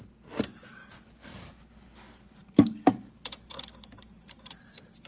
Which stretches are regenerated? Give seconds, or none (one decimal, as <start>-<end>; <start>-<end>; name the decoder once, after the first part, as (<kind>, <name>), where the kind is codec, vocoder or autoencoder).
2.4-4.6 (vocoder, BigVGAN v2)